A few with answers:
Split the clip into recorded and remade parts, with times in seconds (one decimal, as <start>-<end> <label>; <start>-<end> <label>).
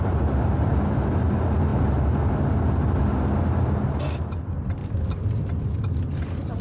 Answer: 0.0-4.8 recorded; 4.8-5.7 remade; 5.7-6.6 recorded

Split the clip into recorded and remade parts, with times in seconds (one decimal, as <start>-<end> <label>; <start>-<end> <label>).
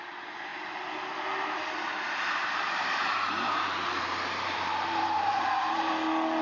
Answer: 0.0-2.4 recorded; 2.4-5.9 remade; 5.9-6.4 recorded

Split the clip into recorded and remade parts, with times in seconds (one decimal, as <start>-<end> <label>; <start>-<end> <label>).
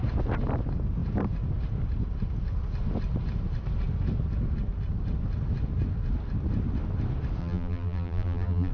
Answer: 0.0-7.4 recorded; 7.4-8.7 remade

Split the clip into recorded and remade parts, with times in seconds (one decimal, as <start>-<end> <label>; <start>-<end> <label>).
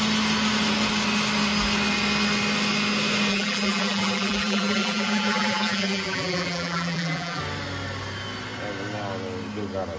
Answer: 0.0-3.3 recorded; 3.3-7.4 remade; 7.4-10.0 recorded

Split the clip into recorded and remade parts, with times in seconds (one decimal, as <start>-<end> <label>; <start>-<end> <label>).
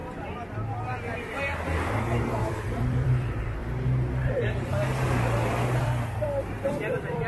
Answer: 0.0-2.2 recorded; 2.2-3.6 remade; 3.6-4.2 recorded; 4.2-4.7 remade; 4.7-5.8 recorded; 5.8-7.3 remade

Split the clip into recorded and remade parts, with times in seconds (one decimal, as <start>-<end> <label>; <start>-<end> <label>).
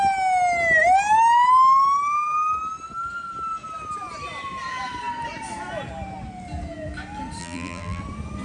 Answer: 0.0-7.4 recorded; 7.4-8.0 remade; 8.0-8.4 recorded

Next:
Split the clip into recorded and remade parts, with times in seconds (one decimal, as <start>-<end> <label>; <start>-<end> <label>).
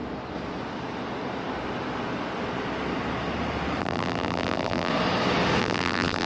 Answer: 0.0-3.8 recorded; 3.8-4.9 remade; 4.9-5.6 recorded; 5.6-6.3 remade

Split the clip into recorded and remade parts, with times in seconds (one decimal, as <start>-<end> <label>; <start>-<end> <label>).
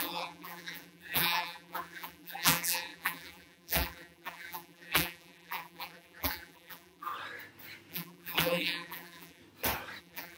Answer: 0.0-7.1 remade; 7.1-7.9 recorded; 7.9-9.4 remade; 9.4-10.0 recorded; 10.0-10.4 remade